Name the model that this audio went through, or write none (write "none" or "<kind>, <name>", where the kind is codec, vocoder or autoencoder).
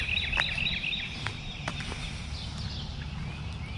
none